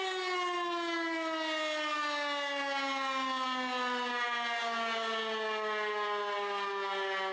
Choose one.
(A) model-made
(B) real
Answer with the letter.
B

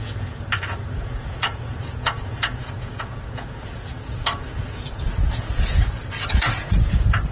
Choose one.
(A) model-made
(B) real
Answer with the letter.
A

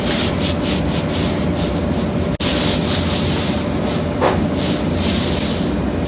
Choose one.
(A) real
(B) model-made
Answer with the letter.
A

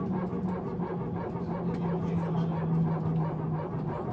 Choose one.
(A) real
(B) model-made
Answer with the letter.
A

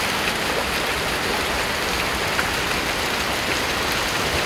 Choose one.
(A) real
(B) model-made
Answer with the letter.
A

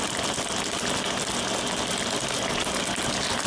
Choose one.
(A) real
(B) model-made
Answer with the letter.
A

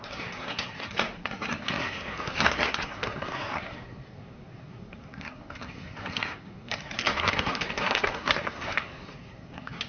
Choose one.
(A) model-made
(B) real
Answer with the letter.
A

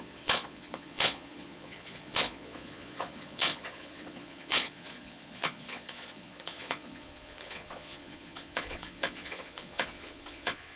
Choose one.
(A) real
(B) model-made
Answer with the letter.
B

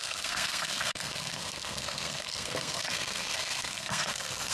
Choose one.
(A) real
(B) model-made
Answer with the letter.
B